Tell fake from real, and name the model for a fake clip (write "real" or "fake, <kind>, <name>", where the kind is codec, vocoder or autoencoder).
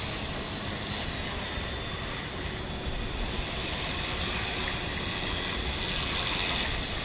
real